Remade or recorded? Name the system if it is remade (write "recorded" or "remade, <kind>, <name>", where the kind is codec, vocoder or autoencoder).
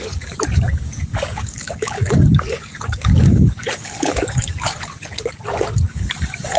remade, codec, DAC